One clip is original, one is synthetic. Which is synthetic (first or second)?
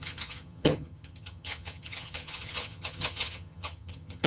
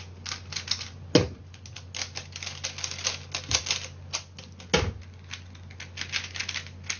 first